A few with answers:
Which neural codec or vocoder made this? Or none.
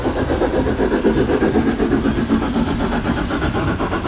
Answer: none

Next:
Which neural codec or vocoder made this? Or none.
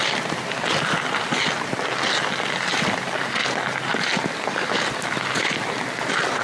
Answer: none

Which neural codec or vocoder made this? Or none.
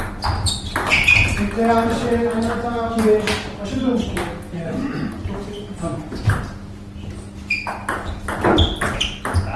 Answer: none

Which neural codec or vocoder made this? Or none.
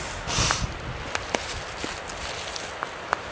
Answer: none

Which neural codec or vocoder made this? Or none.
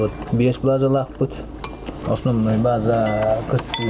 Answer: none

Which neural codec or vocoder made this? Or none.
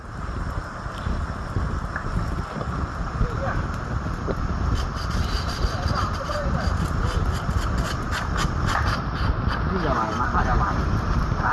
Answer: none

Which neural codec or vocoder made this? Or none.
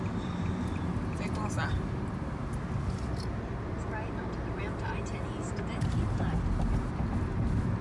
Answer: none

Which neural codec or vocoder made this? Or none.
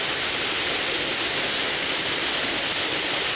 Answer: none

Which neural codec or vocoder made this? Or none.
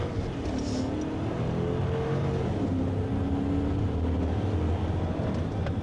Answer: none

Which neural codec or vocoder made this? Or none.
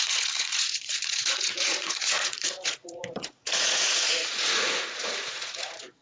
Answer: vocoder, Vocos